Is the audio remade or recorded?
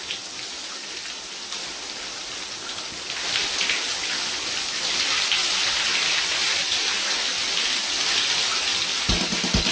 recorded